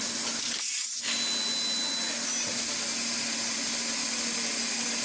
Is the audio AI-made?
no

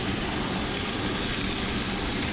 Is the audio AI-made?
yes